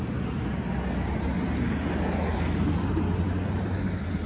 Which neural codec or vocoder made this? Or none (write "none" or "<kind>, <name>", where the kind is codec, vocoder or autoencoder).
none